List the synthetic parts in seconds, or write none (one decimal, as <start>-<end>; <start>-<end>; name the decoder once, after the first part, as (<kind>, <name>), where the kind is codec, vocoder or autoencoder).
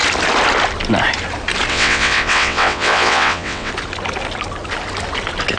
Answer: 1.7-3.7 (vocoder, WaveNeXt)